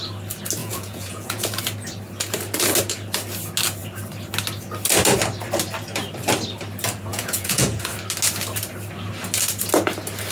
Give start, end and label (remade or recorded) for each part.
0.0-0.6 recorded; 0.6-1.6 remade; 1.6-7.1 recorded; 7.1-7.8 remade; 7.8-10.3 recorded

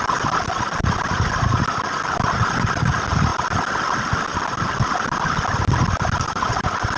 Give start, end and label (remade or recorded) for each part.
0.0-7.0 recorded

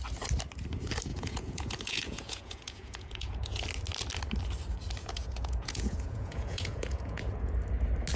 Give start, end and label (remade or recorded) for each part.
0.0-1.1 recorded; 1.1-3.6 remade; 3.6-5.0 recorded; 5.0-7.5 remade; 7.5-8.2 recorded

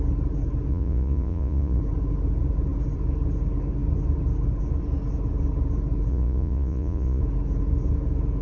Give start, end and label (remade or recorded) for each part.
0.0-0.7 recorded; 0.7-1.8 remade; 1.8-6.1 recorded; 6.1-7.2 remade; 7.2-8.4 recorded

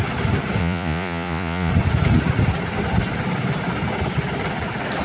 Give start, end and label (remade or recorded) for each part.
0.0-0.6 recorded; 0.6-1.7 remade; 1.7-5.0 recorded

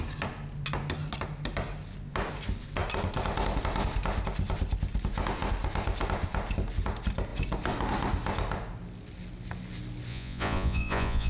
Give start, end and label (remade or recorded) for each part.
0.0-10.1 recorded; 10.1-11.3 remade